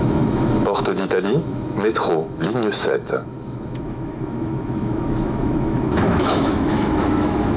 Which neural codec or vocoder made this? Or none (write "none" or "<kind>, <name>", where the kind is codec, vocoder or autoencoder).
autoencoder, DAC-VAE